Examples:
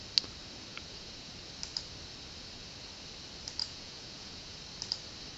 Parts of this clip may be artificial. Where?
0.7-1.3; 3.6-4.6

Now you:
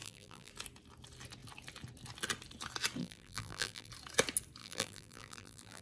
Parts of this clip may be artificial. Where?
0.0-0.5; 3.0-3.9; 4.6-5.8

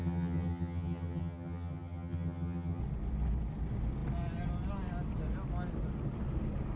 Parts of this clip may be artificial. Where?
0.0-2.8

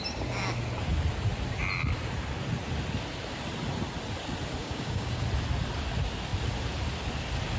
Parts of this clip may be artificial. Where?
4.6-5.2

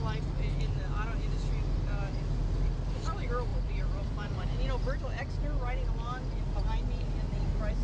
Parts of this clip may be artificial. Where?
3.5-5.0

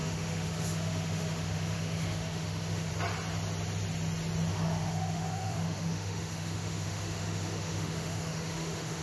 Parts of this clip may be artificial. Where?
0.0-2.9; 4.5-9.0

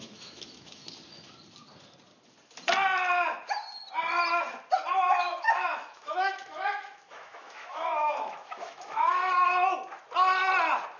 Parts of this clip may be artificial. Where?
0.0-0.8; 5.1-9.2

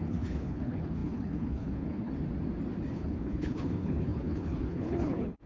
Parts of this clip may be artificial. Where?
0.0-2.1; 2.9-5.5